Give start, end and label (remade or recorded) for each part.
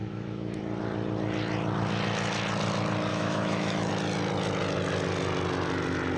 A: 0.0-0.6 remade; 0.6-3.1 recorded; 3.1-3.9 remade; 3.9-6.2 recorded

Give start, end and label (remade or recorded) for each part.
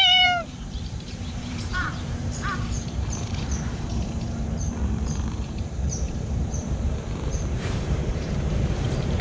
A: 0.0-9.2 remade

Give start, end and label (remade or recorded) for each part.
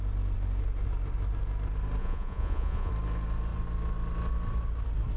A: 0.0-2.0 recorded; 2.0-2.9 remade; 2.9-5.2 recorded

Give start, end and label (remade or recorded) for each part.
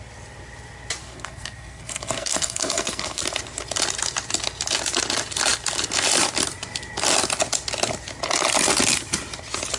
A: 0.0-1.0 recorded; 1.0-3.2 remade; 3.2-9.8 recorded